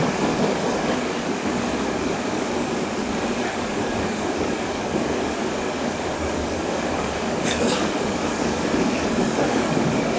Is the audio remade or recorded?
remade